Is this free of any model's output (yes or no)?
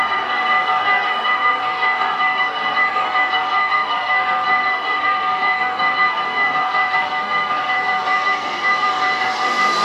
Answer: no